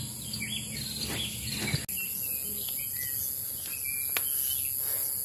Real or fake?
real